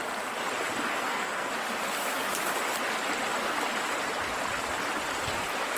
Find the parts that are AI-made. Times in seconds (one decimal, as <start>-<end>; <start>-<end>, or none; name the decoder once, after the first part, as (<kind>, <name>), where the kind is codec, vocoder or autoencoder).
0.9-1.5 (codec, SNAC)